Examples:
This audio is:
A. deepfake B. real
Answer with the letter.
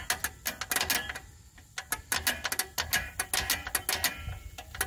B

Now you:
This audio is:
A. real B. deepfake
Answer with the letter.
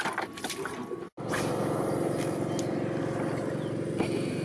A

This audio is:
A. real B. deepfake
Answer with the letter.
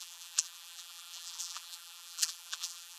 B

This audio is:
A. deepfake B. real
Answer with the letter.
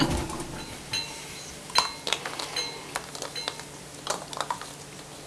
B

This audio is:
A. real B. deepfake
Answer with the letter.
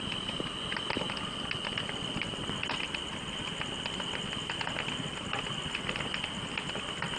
A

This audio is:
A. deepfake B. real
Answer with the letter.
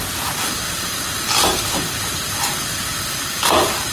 B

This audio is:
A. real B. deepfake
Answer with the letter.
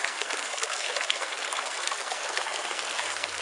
B